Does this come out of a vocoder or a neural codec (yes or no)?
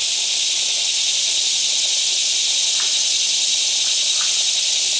no